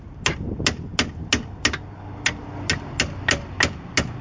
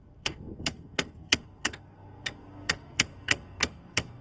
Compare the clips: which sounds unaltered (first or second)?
first